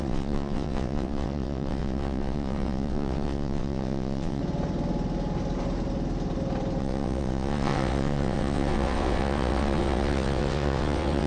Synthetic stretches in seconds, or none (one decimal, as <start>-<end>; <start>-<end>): 0.0-4.4; 6.8-11.3